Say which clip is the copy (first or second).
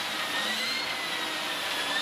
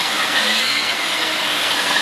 second